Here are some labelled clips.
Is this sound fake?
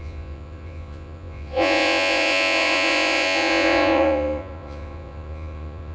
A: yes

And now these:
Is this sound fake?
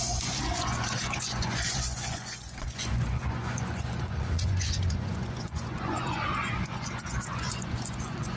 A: yes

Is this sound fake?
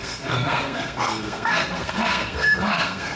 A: yes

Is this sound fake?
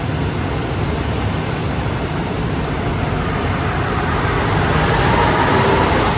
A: no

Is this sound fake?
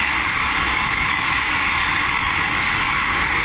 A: yes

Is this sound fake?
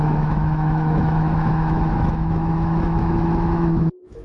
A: yes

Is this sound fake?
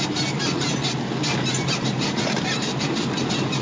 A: no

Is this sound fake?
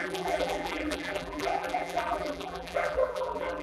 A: yes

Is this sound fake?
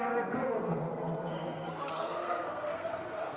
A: yes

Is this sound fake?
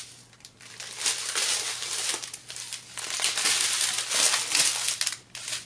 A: no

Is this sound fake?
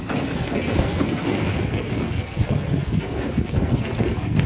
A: yes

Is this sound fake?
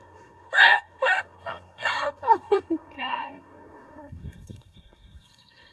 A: yes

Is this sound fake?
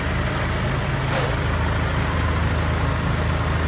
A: no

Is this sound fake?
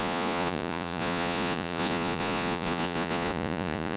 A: yes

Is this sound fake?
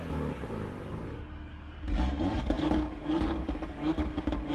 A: yes